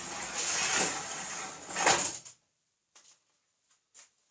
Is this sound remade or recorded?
recorded